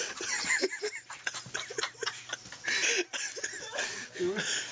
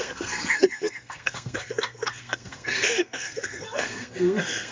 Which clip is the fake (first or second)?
second